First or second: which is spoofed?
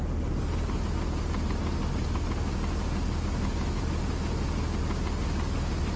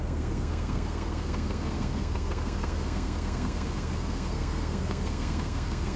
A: second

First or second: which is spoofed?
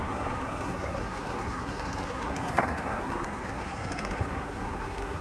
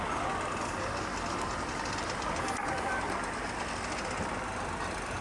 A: first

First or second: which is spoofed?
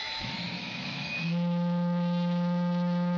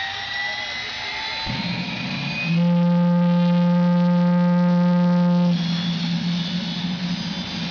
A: first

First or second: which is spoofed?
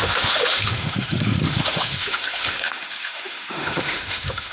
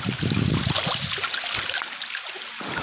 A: first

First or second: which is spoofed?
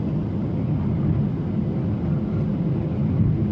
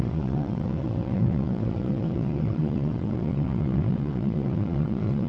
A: second